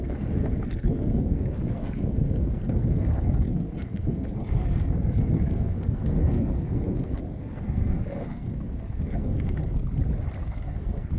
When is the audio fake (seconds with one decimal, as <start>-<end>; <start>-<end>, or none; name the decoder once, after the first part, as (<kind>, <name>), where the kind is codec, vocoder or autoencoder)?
0.0-9.8 (codec, SNAC); 10.4-11.2